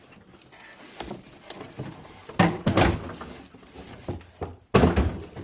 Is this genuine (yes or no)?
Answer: yes